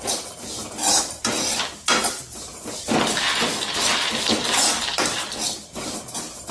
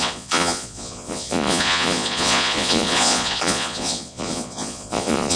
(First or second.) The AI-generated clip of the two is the second